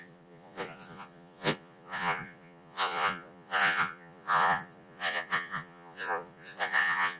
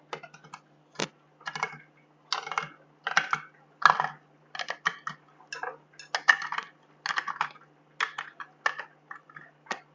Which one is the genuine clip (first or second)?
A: second